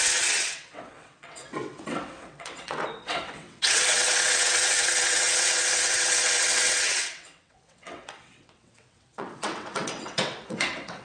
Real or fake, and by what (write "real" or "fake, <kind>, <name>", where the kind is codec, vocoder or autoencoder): fake, vocoder, WaveNeXt